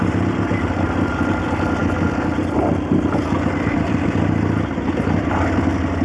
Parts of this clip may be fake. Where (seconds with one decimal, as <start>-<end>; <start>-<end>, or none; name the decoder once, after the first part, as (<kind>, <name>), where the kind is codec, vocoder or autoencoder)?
none